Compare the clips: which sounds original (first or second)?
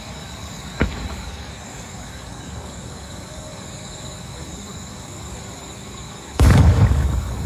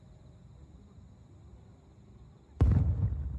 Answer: second